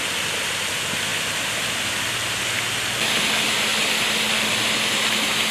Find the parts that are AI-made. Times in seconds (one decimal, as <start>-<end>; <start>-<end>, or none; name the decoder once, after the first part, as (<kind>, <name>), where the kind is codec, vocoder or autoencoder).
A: none

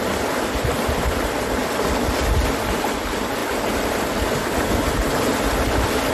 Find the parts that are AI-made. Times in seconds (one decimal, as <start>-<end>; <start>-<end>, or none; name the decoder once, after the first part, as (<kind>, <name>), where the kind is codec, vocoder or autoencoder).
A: none